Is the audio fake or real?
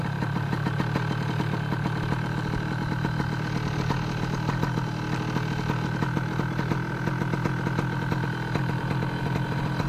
real